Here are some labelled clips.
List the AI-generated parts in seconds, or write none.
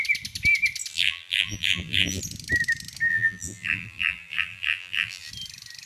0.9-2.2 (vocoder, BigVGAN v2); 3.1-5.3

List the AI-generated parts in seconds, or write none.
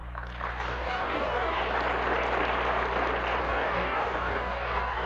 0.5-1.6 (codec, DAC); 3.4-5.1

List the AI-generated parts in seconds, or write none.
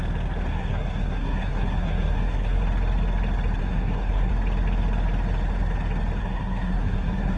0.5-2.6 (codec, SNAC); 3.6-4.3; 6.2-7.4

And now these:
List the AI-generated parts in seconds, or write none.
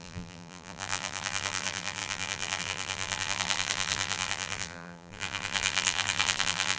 0.0-6.8 (vocoder, BigVGAN v2)